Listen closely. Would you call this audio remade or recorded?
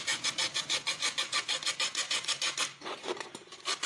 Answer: remade